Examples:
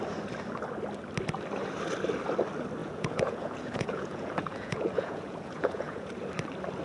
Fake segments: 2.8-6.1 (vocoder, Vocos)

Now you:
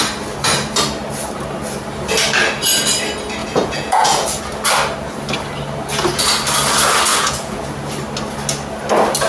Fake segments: 3.4-4.4 (vocoder, Vocos); 7.1-7.6

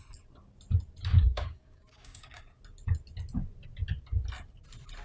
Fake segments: 1.1-2.4 (codec, DAC)

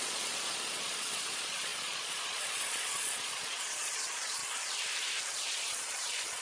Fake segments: 0.0-4.4 (vocoder, Vocos); 5.3-6.4

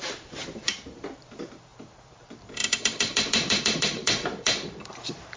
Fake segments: 0.0-5.4 (vocoder, BigVGAN v2)